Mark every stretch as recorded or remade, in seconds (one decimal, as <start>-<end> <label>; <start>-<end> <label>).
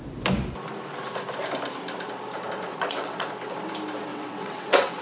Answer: 0.0-2.7 recorded; 2.7-3.3 remade; 3.3-4.1 recorded; 4.1-5.0 remade